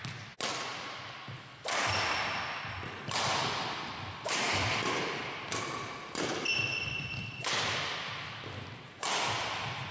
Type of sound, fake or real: real